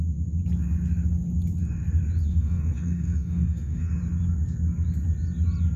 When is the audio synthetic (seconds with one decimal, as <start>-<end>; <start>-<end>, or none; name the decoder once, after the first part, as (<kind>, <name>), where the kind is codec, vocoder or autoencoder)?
2.3-3.9 (codec, DAC)